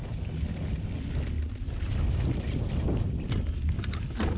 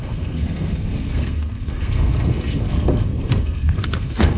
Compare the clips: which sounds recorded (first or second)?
first